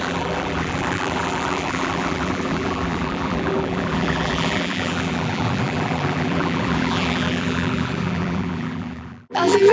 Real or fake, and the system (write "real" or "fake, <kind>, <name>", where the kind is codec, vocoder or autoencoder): fake, vocoder, BigVGAN v2